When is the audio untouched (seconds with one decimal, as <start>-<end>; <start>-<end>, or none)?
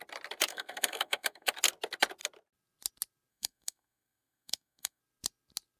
0.0-0.5; 1.5-3.3; 5.0-5.8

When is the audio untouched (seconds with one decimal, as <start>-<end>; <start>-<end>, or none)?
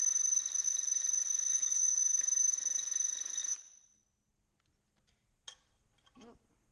0.0-1.5; 2.0-6.7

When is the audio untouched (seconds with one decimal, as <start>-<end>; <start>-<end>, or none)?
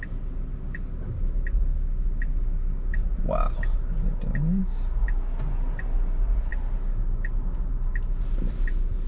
0.0-9.1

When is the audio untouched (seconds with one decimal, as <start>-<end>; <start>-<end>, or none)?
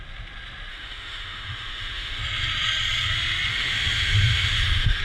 0.0-0.7; 2.2-3.5